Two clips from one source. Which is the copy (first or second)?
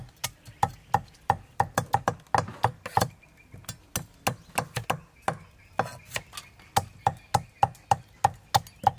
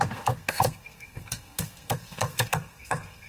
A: second